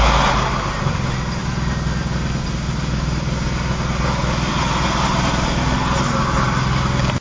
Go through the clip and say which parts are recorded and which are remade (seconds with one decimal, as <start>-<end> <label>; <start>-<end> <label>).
0.0-7.2 recorded